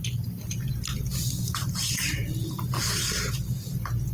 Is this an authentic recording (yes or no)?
no